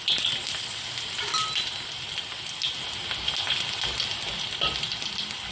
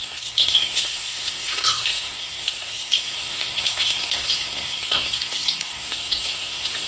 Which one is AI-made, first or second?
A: second